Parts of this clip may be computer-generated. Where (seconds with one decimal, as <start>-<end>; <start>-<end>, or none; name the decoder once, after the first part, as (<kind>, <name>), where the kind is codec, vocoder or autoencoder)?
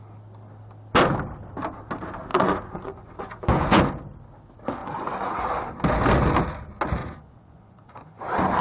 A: 2.3-3.8 (vocoder, Vocos); 4.8-5.4; 7.0-8.2